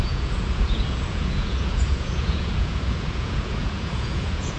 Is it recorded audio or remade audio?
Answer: remade